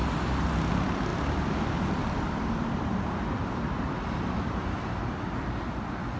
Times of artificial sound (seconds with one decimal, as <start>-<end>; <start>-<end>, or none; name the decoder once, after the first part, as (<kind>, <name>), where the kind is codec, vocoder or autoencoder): 1.1-4.8 (vocoder, BigVGAN v2)